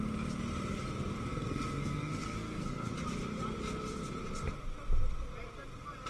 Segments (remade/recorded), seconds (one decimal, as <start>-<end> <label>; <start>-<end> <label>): 0.0-1.3 recorded; 1.3-2.9 remade; 2.9-6.1 recorded